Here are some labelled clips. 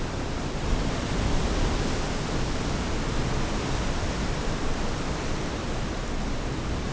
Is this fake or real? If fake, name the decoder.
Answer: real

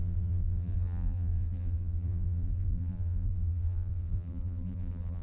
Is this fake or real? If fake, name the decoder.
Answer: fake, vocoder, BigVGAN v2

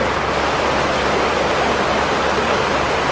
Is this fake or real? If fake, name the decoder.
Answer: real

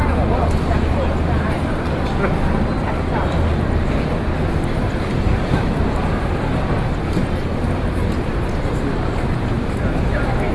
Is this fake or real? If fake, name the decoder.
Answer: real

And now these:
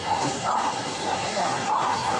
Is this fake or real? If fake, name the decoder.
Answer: fake, codec, SNAC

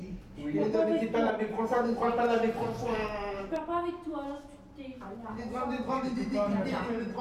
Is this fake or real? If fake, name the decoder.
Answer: fake, vocoder, BigVGAN v2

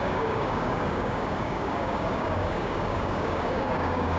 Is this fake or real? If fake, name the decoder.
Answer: fake, codec, DAC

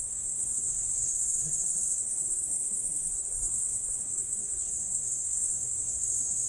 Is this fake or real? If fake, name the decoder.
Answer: fake, codec, SNAC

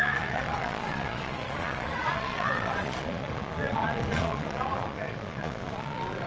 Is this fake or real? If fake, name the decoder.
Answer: fake, vocoder, Vocos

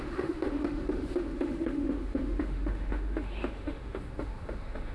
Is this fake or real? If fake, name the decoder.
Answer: fake, autoencoder, DAC-VAE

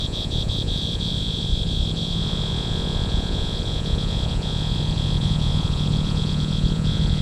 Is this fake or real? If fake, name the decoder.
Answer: fake, vocoder, Vocos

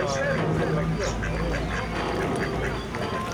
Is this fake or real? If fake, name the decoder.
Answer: real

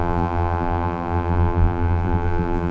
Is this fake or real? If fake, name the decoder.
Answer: fake, vocoder, BigVGAN v2